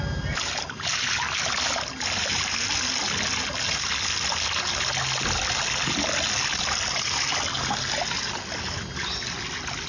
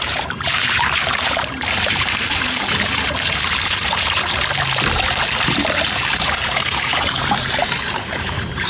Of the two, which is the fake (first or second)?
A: second